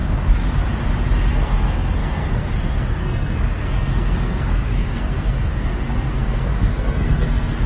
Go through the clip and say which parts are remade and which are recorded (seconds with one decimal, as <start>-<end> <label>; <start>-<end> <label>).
0.0-1.3 recorded; 1.3-7.7 remade